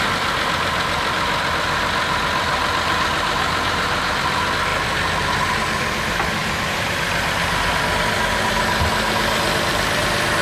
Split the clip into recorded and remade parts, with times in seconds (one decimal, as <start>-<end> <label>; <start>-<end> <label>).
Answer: 0.0-4.7 recorded; 4.7-5.5 remade; 5.5-10.4 recorded